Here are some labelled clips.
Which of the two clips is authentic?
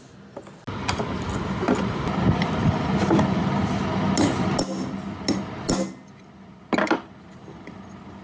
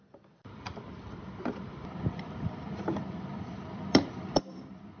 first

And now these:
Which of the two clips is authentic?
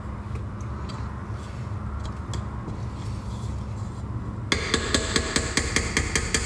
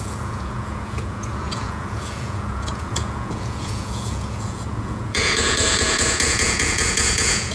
first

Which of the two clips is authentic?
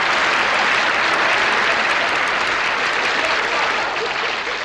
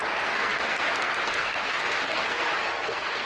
first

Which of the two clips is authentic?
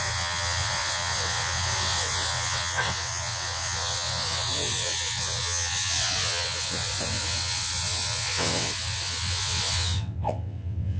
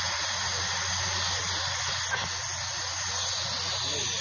second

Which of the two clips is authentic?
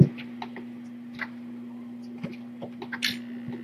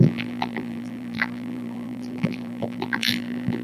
first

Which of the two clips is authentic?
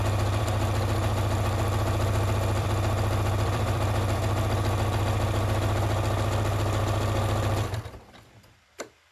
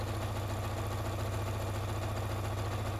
second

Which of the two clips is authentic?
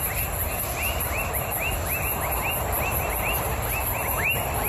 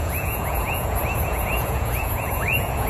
first